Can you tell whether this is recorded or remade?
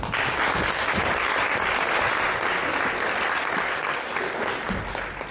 recorded